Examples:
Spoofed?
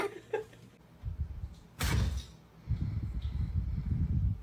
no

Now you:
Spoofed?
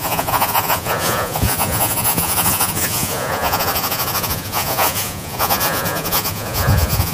yes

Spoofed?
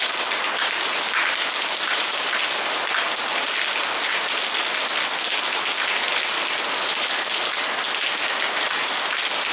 no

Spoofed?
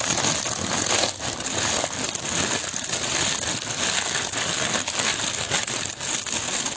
no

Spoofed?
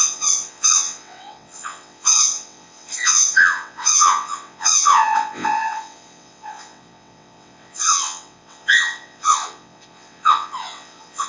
yes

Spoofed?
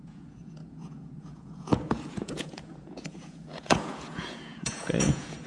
yes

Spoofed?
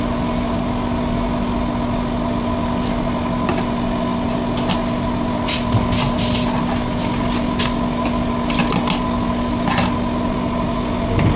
no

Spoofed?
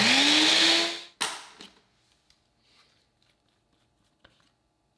no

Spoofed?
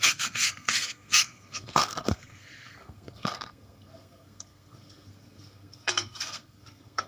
yes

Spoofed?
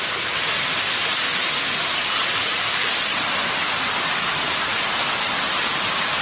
no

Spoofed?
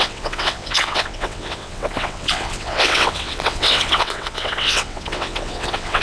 yes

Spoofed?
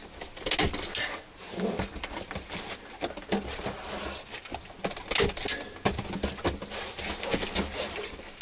no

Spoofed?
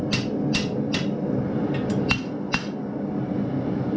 no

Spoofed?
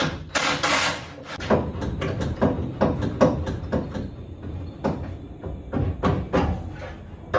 no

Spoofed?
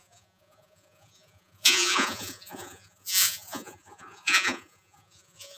yes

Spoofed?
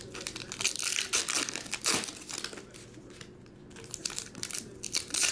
no